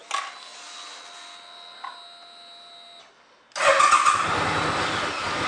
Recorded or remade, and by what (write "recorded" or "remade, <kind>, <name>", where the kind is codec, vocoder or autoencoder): recorded